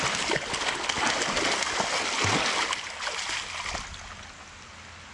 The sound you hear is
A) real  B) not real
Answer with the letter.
A